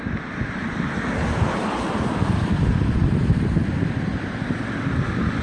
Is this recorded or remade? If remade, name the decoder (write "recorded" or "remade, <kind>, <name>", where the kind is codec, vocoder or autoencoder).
recorded